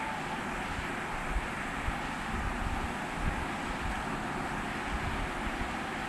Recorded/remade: recorded